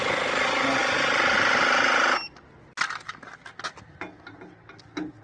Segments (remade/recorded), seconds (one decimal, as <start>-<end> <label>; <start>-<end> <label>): 0.0-5.2 recorded